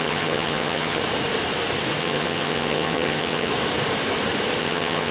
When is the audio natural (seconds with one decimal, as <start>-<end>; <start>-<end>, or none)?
1.0-2.0; 3.5-4.6